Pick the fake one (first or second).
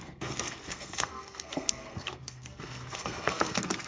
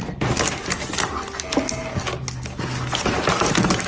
first